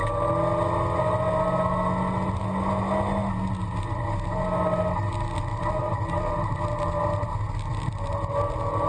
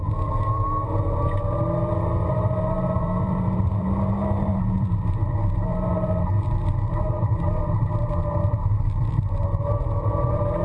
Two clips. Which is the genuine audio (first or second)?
first